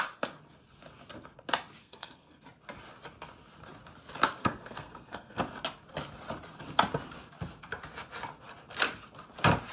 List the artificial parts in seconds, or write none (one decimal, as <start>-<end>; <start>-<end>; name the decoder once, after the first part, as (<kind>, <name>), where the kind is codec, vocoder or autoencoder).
1.8-2.4 (codec, SNAC); 4.4-5.4